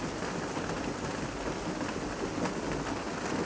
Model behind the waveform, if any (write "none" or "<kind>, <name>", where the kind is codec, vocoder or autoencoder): none